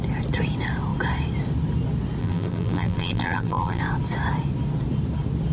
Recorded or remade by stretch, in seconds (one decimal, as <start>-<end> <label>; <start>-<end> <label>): 0.0-2.2 recorded; 2.2-3.8 remade; 3.8-5.5 recorded